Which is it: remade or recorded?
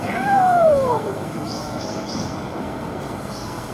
remade